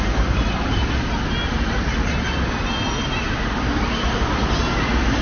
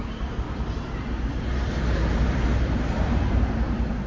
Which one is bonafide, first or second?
first